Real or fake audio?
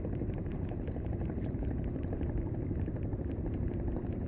fake